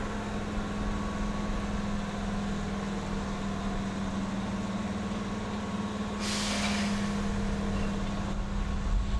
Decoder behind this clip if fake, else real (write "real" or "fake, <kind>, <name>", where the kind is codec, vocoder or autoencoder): real